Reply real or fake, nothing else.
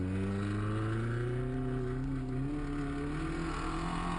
real